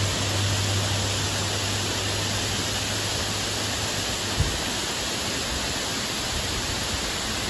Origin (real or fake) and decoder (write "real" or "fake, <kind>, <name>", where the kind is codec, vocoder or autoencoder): real